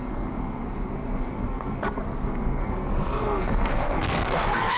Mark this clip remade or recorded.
remade